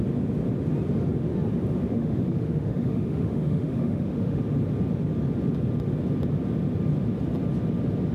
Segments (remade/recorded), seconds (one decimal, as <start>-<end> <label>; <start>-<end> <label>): 0.0-1.9 recorded; 1.9-4.4 remade; 4.4-8.1 recorded